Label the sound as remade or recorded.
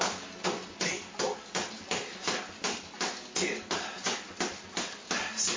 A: recorded